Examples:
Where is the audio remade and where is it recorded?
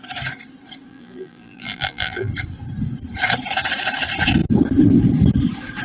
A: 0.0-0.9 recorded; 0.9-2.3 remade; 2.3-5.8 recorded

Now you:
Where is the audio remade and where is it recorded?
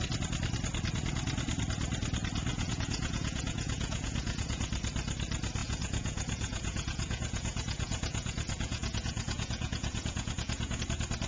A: 0.0-2.5 recorded; 2.5-4.6 remade; 4.6-5.6 recorded; 5.6-10.8 remade; 10.8-11.3 recorded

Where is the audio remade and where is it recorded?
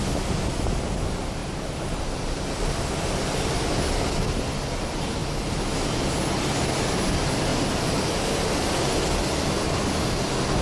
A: 0.0-1.4 recorded; 1.4-2.1 remade; 2.1-10.6 recorded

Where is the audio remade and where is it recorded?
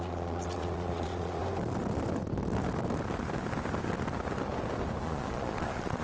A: 0.0-1.4 remade; 1.4-5.0 recorded; 5.0-6.0 remade